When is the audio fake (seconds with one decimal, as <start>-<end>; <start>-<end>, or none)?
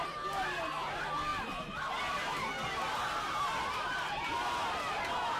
none